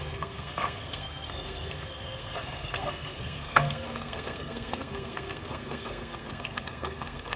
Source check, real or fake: fake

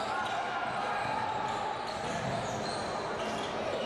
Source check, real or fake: real